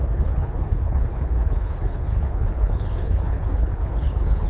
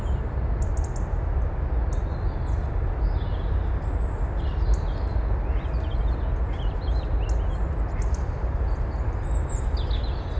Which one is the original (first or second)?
second